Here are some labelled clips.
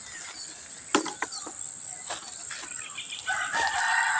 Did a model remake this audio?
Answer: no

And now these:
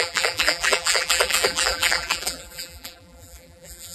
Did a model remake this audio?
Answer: yes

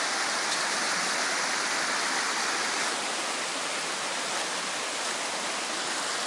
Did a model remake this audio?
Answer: no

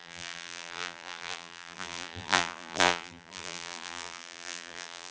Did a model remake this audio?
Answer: yes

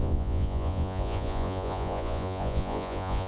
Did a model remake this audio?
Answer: yes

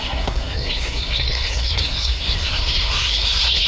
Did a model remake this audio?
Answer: yes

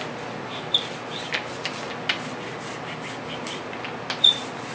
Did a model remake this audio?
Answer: no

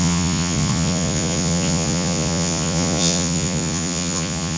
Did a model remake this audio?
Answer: yes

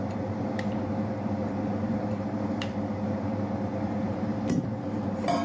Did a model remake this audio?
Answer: yes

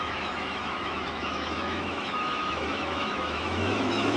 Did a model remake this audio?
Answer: yes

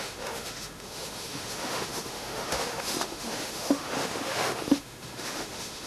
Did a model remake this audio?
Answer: yes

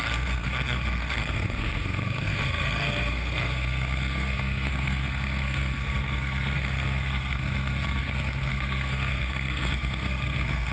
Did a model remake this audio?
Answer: yes